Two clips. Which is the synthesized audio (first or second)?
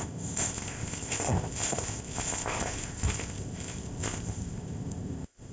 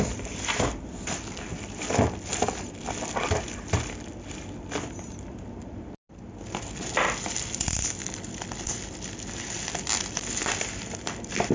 first